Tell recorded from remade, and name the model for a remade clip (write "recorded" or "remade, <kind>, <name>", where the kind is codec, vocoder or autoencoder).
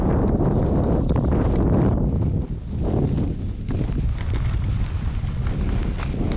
recorded